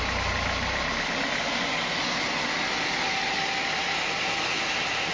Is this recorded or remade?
recorded